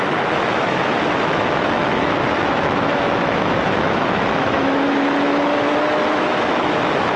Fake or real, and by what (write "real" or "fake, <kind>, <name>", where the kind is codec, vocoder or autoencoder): fake, autoencoder, DAC-VAE